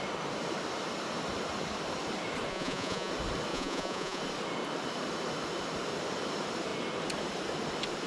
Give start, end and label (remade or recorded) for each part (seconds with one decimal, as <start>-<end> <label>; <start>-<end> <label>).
0.0-2.5 recorded; 2.5-3.1 remade; 3.1-3.5 recorded; 3.5-4.2 remade; 4.2-8.1 recorded